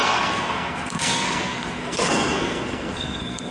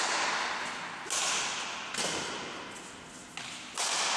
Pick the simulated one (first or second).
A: first